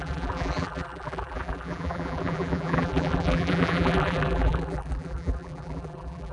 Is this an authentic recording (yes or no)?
no